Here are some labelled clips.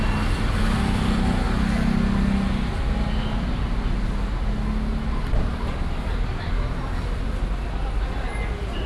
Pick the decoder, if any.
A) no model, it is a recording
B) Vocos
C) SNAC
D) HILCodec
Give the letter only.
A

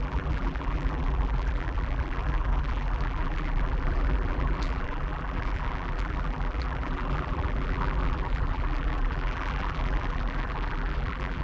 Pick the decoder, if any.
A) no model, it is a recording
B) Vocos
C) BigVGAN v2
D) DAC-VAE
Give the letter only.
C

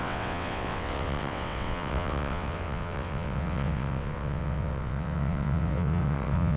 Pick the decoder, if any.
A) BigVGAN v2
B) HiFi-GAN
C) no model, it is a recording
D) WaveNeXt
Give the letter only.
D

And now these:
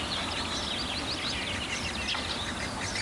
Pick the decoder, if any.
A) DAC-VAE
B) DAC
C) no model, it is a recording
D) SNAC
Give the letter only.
C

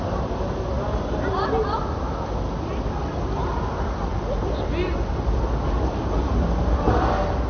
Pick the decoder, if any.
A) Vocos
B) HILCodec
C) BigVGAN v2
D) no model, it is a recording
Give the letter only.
D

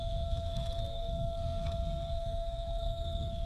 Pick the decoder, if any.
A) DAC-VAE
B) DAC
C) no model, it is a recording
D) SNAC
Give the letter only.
D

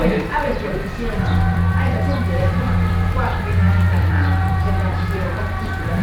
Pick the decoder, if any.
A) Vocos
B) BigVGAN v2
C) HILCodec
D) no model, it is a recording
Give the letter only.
B